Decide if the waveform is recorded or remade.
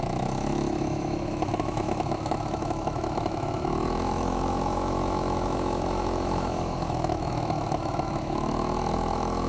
remade